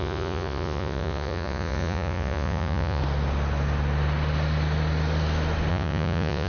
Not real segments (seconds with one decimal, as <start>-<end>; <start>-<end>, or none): 0.0-3.0; 5.7-6.5